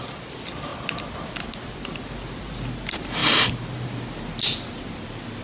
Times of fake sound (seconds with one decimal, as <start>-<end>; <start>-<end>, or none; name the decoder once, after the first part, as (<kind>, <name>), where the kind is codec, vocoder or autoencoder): none